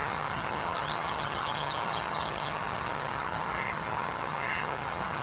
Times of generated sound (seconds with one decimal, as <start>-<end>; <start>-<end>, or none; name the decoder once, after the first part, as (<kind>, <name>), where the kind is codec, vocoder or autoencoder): 0.0-5.2 (vocoder, HiFi-GAN)